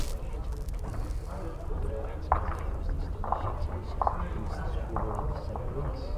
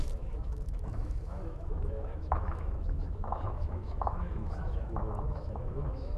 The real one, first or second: first